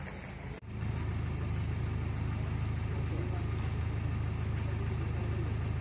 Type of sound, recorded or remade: recorded